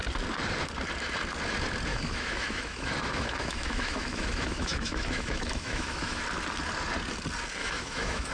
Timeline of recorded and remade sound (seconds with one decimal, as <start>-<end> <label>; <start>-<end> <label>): 0.0-1.9 recorded; 1.9-6.2 remade; 6.2-7.6 recorded; 7.6-8.3 remade